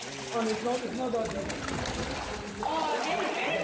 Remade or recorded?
recorded